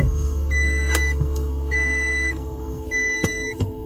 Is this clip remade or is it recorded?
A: remade